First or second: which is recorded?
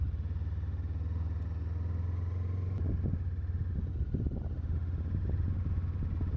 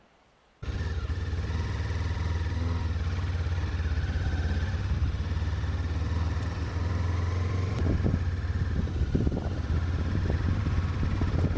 first